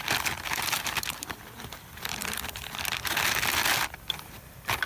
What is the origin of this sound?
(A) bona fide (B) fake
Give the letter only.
A